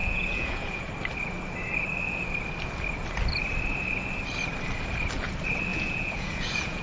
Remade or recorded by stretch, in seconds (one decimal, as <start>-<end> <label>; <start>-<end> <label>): 0.0-0.9 remade; 0.9-5.7 recorded; 5.7-6.8 remade